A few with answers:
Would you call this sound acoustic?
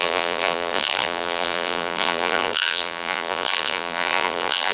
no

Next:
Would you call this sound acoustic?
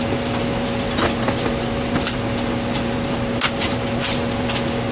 yes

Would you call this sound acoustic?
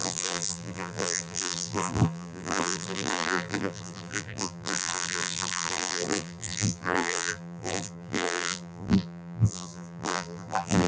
no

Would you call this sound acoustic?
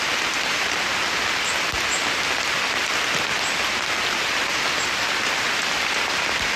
yes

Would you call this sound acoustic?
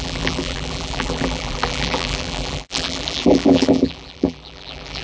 no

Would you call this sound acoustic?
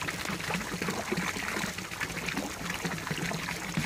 yes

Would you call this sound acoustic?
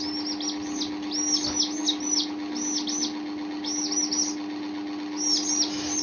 yes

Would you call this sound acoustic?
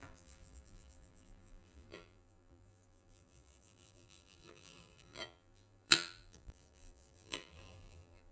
no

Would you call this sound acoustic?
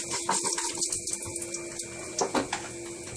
yes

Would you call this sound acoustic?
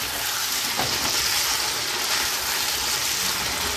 yes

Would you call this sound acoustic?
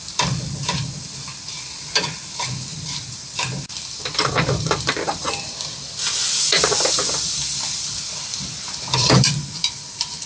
no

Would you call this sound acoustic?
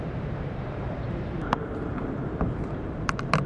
no